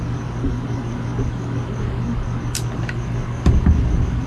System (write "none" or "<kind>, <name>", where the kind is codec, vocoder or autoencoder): codec, DAC